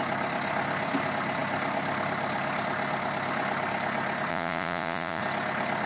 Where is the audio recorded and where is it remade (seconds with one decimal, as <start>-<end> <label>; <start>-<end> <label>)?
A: 0.0-4.3 recorded; 4.3-5.2 remade; 5.2-5.9 recorded